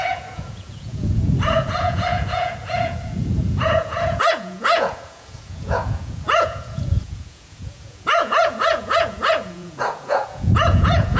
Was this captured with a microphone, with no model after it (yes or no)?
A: no